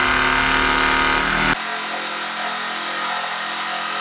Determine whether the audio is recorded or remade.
recorded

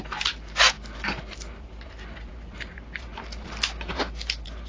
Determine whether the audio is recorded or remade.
recorded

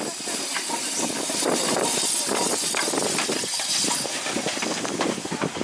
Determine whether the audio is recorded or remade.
recorded